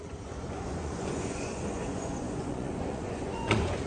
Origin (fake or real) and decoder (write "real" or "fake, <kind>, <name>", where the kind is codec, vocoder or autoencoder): fake, vocoder, Vocos